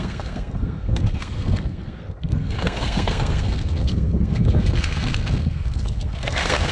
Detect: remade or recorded remade